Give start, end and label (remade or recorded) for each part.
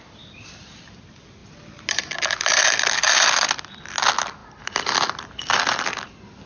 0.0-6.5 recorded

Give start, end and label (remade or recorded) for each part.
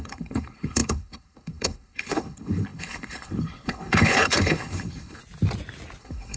0.0-5.2 remade; 5.2-6.0 recorded; 6.0-6.4 remade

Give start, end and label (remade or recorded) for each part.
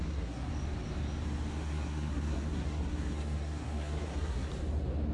0.0-0.5 remade; 0.5-1.5 recorded; 1.5-4.5 remade; 4.5-5.1 recorded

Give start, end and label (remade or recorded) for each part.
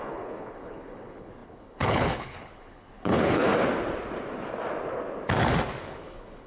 0.0-3.5 remade; 3.5-5.8 recorded; 5.8-6.5 remade